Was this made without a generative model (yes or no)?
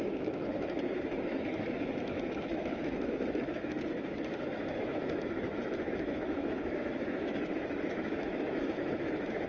no